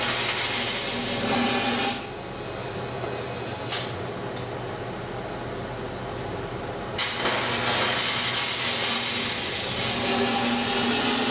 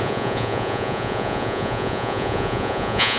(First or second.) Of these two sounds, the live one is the first